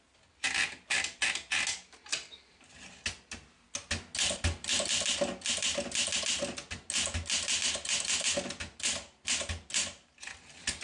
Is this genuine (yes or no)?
yes